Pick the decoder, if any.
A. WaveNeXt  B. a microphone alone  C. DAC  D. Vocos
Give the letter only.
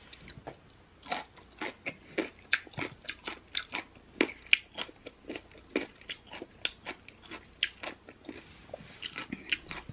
B